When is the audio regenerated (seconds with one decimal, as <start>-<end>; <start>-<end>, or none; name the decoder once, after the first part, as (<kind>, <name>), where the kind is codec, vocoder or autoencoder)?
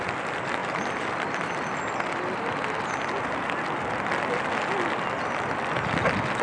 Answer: none